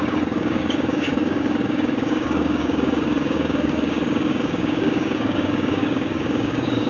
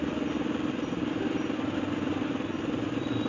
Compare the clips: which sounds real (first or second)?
second